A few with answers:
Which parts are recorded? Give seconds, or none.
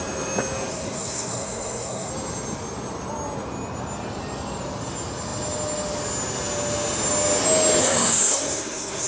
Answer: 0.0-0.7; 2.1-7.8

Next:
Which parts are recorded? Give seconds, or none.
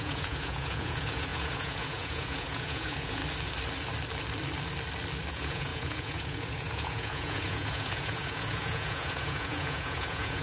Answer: 3.2-5.3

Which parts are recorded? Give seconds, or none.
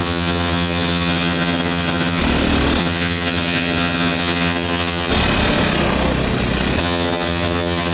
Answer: 2.2-2.8; 5.1-6.8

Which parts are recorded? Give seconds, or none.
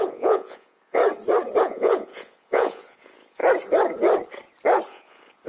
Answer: 1.0-1.6; 3.4-4.9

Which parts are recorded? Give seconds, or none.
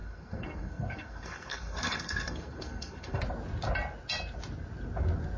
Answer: 3.2-5.4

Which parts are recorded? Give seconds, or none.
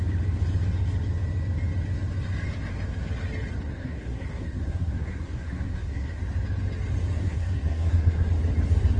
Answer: 0.0-3.7; 6.2-7.2; 8.3-9.0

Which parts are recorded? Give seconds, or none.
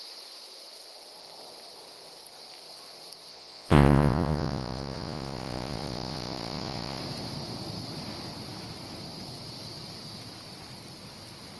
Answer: 0.0-3.3; 7.0-11.6